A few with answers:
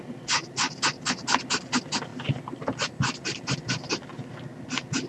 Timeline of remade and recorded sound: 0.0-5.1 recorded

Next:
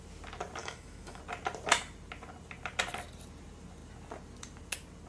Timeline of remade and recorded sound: 0.0-0.6 recorded; 0.6-1.2 remade; 1.2-5.1 recorded

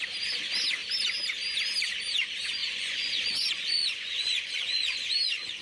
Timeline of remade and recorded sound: 0.0-2.6 recorded; 2.6-5.6 remade

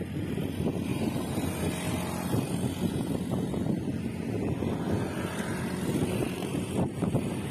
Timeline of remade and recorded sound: 0.0-0.9 recorded; 0.9-1.6 remade; 1.6-5.3 recorded; 5.3-7.5 remade

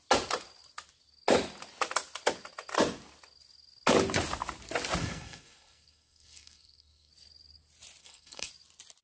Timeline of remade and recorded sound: 0.0-5.0 recorded; 5.0-7.1 remade; 7.1-8.0 recorded; 8.0-8.5 remade; 8.5-9.0 recorded

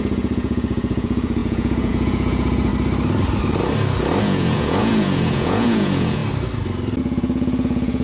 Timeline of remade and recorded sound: 0.0-2.7 remade; 2.7-4.2 recorded; 4.2-6.2 remade; 6.2-7.0 recorded; 7.0-8.0 remade